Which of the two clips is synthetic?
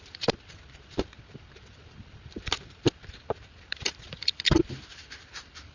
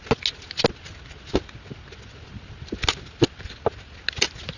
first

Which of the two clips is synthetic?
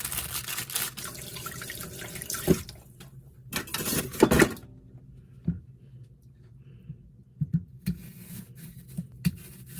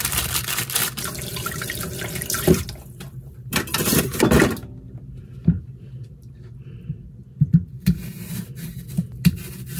second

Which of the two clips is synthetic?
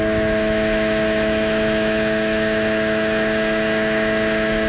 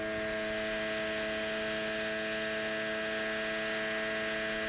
first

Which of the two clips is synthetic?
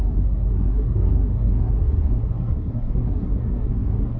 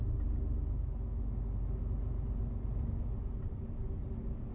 first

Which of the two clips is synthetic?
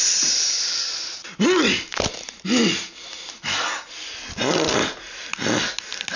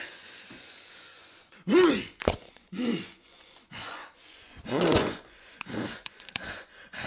second